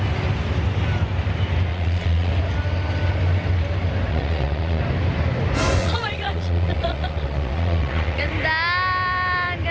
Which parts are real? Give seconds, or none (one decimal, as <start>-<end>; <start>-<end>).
0.0-1.7; 2.3-4.1; 4.8-5.8; 8.3-9.7